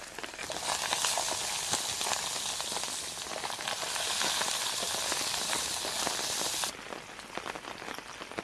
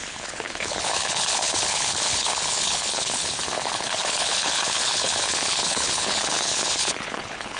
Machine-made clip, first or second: second